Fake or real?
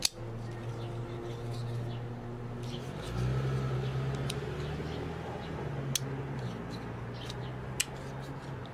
real